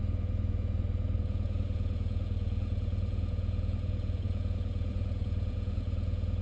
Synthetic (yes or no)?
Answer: yes